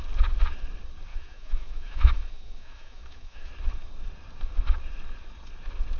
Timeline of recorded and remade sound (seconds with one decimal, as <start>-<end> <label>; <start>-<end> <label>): 0.0-1.1 recorded; 1.1-3.5 remade; 3.5-6.0 recorded